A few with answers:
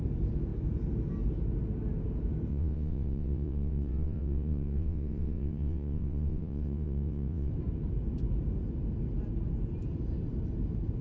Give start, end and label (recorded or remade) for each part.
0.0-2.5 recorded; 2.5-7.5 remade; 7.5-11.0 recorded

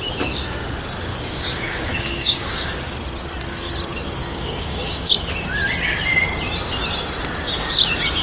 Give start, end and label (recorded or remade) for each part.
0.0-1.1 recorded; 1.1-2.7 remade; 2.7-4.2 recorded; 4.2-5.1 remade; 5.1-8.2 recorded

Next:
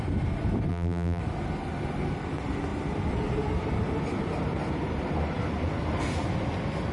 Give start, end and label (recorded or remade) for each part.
0.0-0.7 recorded; 0.7-1.2 remade; 1.2-6.9 recorded

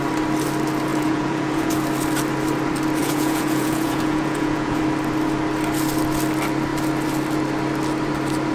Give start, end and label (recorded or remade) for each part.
0.0-0.9 recorded; 0.9-1.7 remade; 1.7-3.0 recorded; 3.0-4.8 remade; 4.8-8.5 recorded

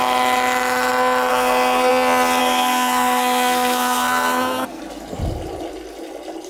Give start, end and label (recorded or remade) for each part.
0.0-1.3 recorded; 1.3-1.9 remade; 1.9-2.4 recorded; 2.4-4.8 remade; 4.8-6.5 recorded

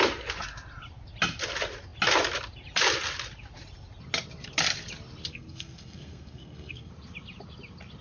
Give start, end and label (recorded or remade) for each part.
0.0-5.3 recorded; 5.3-6.9 remade; 6.9-8.0 recorded